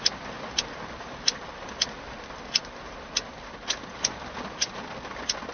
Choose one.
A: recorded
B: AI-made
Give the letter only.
A